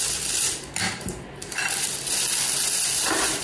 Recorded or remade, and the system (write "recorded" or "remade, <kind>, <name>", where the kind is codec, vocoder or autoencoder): recorded